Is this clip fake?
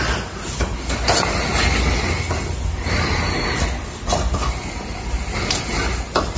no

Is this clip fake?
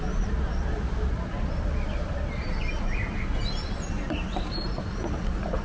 no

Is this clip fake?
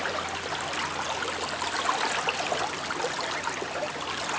no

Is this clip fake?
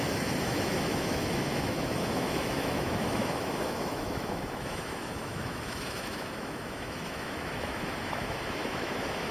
yes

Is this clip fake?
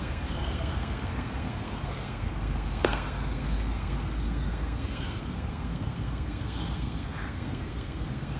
yes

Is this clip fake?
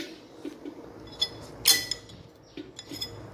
no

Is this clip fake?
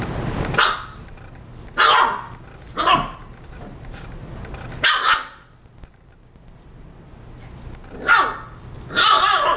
no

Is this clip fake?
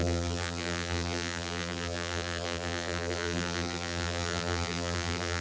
yes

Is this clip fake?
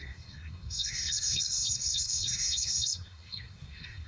yes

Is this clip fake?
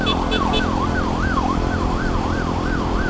no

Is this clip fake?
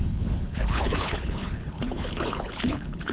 yes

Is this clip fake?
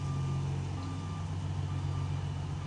no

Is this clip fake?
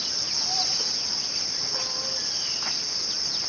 no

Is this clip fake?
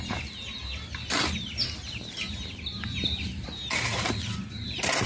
no